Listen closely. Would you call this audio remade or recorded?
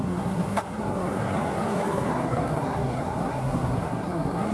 remade